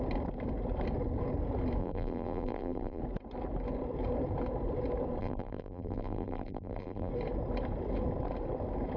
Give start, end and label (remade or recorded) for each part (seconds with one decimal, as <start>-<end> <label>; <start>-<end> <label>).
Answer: 0.0-1.8 recorded; 1.8-3.0 remade; 3.0-5.2 recorded; 5.2-7.1 remade; 7.1-9.0 recorded